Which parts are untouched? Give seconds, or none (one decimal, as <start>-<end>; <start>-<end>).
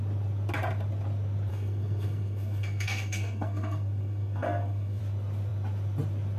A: 0.0-1.5; 5.0-6.4